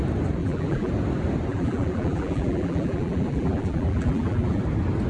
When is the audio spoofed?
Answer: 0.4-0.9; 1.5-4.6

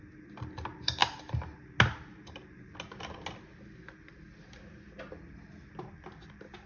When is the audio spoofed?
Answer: none

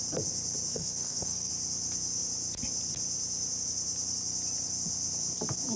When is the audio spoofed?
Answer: 0.7-1.5

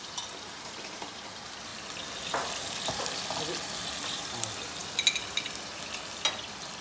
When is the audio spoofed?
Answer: none

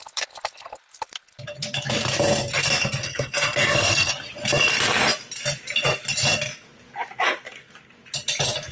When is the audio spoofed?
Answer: 3.0-4.1